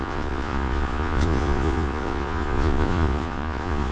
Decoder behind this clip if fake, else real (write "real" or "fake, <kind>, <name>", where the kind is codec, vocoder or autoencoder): fake, vocoder, Vocos